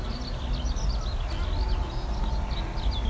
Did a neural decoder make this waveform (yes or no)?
no